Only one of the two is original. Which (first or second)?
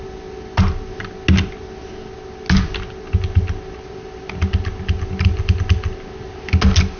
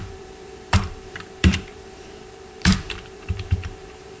first